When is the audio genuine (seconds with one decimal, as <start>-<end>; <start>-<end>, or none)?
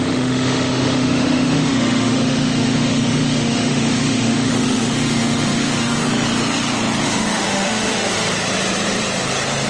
6.0-7.0; 8.3-9.7